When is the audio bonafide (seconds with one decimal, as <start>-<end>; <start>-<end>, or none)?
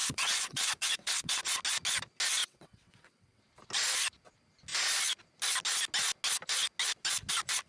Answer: 1.4-2.4; 3.4-7.7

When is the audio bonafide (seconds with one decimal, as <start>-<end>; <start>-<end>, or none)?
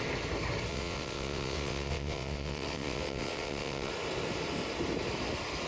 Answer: 0.0-0.7; 3.9-5.7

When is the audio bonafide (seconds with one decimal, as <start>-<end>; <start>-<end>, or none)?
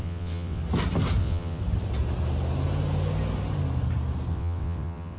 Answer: 0.6-1.2; 1.6-4.3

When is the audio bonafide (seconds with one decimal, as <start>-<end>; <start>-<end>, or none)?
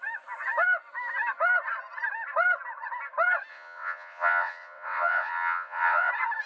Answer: 0.0-3.5; 6.1-6.5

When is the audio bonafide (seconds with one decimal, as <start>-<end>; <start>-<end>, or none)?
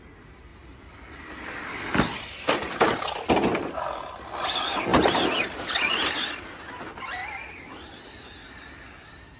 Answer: 0.0-9.4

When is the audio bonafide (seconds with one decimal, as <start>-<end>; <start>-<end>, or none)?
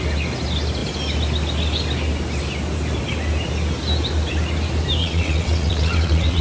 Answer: 0.0-5.0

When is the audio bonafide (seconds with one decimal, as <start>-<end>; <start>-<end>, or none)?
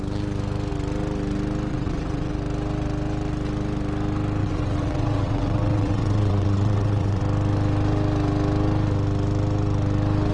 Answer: 0.0-1.7; 2.3-4.4; 7.2-10.3